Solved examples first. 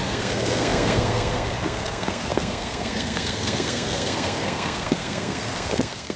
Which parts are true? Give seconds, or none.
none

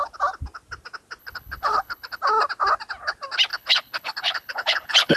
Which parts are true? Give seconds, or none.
0.0-1.2; 2.2-3.5

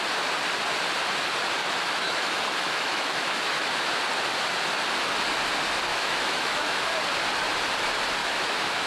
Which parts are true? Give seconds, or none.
0.0-1.6; 3.9-5.9; 6.8-8.2